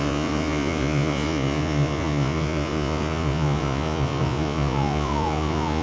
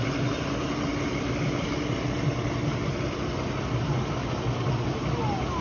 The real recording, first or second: second